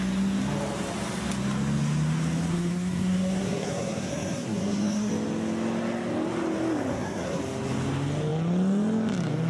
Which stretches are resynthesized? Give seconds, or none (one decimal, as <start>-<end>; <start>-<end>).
2.5-5.1; 6.9-7.4